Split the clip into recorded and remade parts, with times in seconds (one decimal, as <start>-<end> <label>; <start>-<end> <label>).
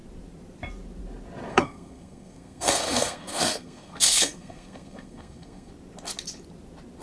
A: 0.0-1.5 recorded; 1.5-5.7 remade; 5.7-7.0 recorded